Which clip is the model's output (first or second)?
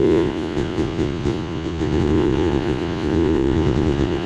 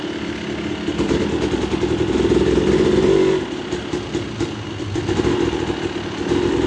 first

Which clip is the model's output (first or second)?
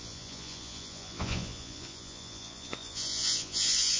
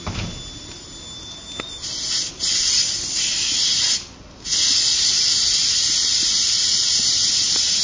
first